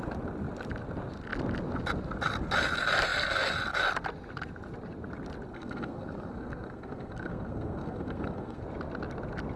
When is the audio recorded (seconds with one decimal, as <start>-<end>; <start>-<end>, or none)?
0.0-5.5; 8.6-9.6